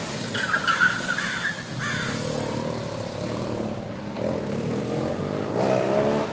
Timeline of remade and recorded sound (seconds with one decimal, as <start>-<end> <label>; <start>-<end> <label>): 0.0-4.8 recorded; 4.8-5.5 remade; 5.5-6.3 recorded